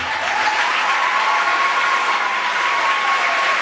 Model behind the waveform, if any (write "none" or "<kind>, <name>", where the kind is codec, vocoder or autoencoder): vocoder, BigVGAN v2